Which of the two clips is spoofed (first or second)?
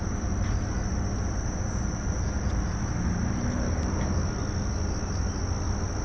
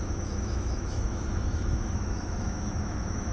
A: second